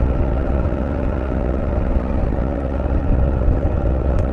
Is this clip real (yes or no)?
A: no